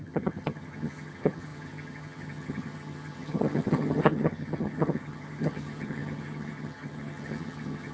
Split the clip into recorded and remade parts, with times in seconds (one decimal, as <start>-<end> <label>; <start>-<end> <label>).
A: 0.0-7.9 remade